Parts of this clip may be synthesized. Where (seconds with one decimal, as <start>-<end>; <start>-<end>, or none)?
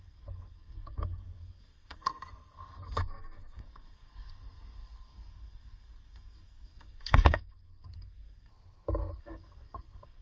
0.0-8.5; 9.2-10.2